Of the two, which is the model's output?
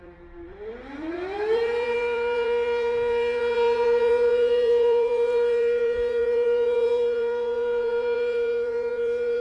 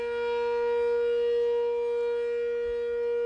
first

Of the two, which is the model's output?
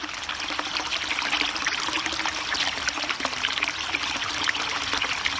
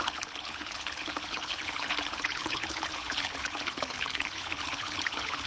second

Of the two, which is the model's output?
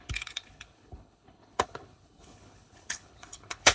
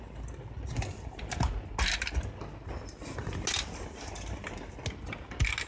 first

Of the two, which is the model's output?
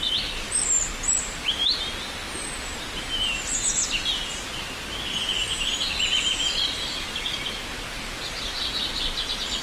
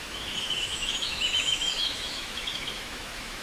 second